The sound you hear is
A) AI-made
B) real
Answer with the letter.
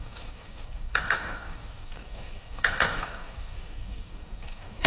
A